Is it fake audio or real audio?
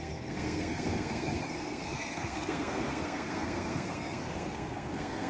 fake